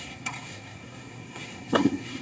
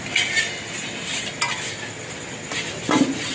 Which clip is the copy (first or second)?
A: first